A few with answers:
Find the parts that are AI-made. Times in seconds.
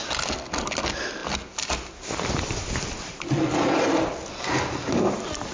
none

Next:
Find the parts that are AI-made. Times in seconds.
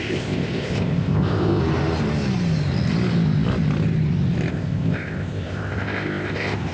0.0-1.6 (codec, ZipCodec); 4.5-6.7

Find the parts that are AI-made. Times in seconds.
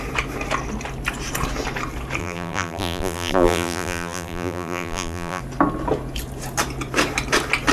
2.2-5.4 (vocoder, BigVGAN v2)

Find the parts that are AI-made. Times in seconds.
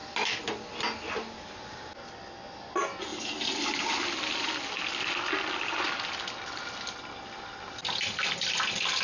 3.1-5.3 (vocoder, BigVGAN v2)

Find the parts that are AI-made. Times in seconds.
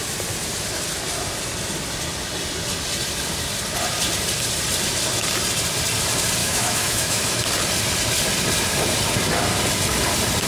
6.4-7.4 (autoencoder, DAC-VAE)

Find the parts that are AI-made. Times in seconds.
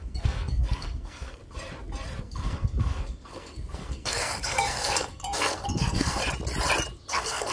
0.0-1.4 (codec, SNAC); 2.2-6.2; 7.1-7.5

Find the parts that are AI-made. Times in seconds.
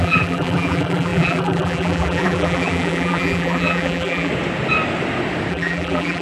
0.0-4.3 (vocoder, BigVGAN v2); 5.5-6.2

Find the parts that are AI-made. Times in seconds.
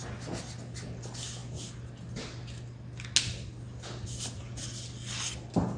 none